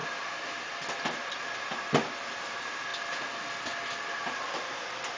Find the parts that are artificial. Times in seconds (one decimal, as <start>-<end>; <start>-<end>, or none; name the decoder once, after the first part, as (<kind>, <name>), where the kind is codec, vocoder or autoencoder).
none